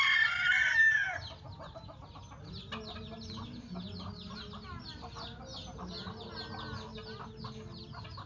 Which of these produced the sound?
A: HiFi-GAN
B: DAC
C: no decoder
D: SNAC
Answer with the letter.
C